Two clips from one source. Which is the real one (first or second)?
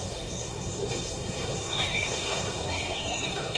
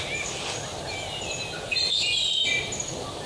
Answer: second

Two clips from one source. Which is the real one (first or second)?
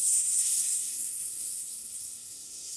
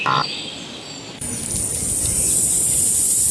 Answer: second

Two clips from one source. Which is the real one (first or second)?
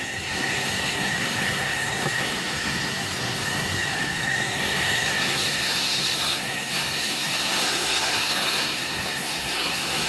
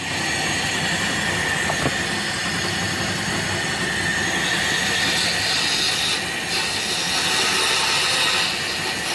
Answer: second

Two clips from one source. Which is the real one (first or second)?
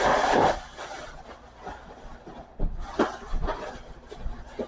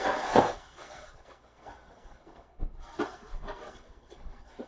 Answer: first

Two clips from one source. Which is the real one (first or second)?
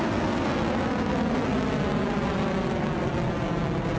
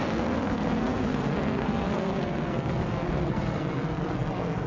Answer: first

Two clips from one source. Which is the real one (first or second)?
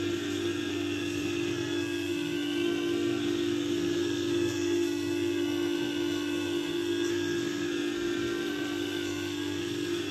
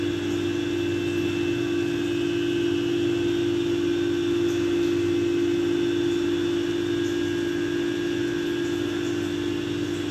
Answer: second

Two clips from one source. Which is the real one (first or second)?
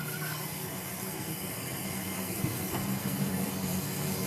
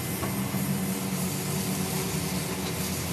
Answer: second